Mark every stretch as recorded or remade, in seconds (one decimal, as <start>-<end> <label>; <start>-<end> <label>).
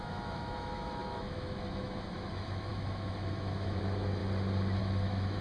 0.0-4.2 remade; 4.2-4.8 recorded; 4.8-5.4 remade